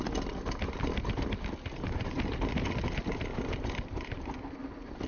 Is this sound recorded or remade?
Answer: recorded